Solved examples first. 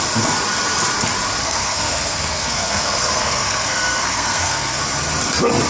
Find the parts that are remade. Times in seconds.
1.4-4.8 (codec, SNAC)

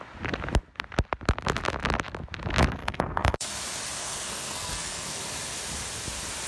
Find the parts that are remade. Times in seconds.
2.8-3.5 (codec, SNAC); 4.0-5.2

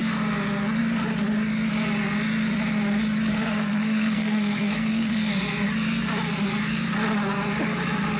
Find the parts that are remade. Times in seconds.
3.3-5.3 (codec, SNAC)

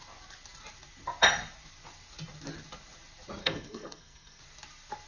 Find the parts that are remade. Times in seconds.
3.4-4.4 (codec, SNAC)